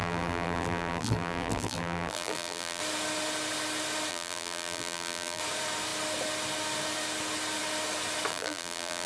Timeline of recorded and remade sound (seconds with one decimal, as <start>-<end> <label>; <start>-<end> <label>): 0.0-2.8 remade; 2.8-4.1 recorded; 4.1-5.4 remade; 5.4-8.3 recorded; 8.3-9.1 remade